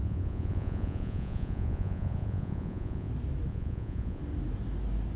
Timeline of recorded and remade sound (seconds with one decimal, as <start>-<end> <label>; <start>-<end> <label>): 0.0-3.1 remade; 3.1-3.5 recorded; 3.5-4.2 remade; 4.2-5.2 recorded